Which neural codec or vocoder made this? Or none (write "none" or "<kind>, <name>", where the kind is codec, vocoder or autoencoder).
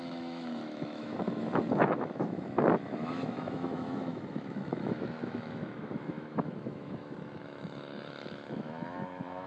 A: autoencoder, DAC-VAE